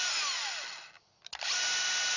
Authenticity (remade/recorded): recorded